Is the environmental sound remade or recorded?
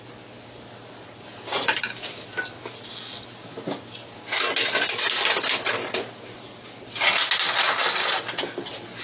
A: recorded